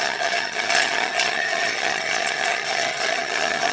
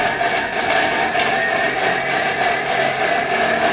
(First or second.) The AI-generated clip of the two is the first